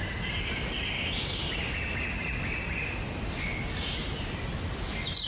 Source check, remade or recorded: recorded